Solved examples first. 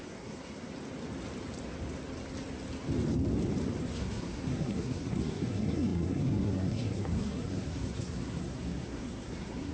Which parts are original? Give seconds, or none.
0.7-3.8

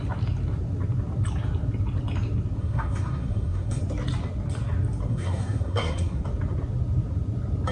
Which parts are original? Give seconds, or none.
0.0-2.6; 3.8-5.1; 6.2-7.7

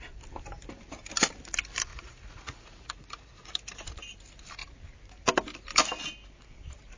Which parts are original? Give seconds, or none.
0.0-1.9; 3.5-7.0

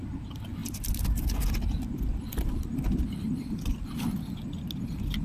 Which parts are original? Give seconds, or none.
0.0-5.2

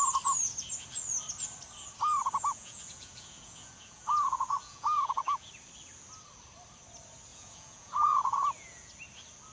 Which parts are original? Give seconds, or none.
0.0-2.2; 5.5-7.3; 8.9-9.5

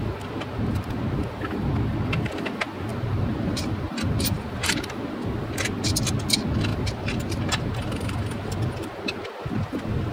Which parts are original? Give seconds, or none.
0.0-2.9; 5.1-6.7; 8.5-10.1

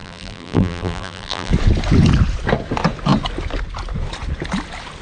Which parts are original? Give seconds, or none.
1.5-5.0